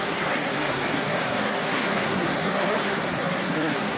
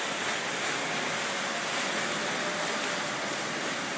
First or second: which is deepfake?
first